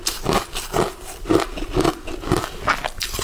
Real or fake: real